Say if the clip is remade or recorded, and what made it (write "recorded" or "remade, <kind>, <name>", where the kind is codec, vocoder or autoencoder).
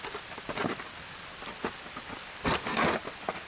recorded